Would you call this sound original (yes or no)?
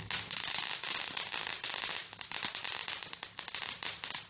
yes